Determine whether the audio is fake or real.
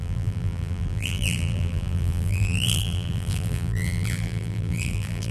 fake